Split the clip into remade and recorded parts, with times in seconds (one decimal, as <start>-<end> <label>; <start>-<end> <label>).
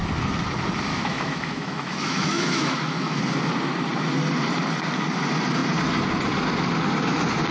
0.0-0.9 recorded; 0.9-3.2 remade; 3.2-7.5 recorded